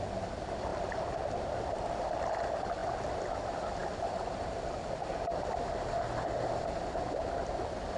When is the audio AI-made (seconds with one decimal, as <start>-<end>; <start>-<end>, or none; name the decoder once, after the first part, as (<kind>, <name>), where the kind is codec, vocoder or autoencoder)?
0.7-2.0 (vocoder, BigVGAN v2)